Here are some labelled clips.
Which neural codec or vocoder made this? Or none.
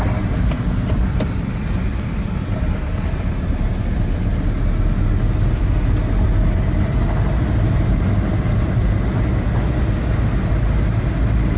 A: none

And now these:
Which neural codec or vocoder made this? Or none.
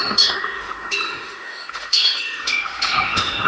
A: autoencoder, DAC-VAE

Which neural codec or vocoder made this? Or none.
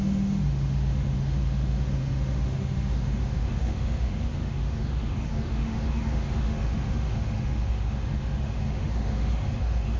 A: autoencoder, DAC-VAE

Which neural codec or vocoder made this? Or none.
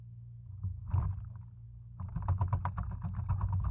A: none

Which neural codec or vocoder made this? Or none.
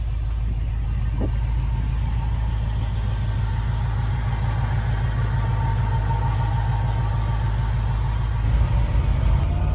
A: none